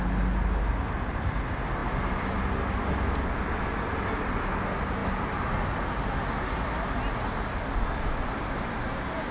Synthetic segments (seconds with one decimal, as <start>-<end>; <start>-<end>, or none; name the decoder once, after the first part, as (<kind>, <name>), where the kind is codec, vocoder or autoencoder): none